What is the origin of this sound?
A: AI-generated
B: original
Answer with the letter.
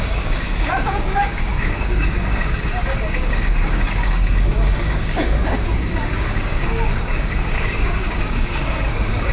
A